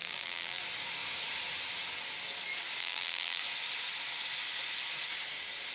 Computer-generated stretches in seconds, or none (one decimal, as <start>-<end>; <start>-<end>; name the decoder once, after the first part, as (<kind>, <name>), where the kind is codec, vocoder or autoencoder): 0.0-0.6 (vocoder, BigVGAN v2); 2.8-3.4